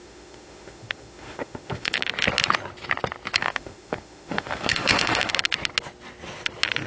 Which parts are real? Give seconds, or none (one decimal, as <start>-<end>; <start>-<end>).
2.0-3.4; 5.3-6.9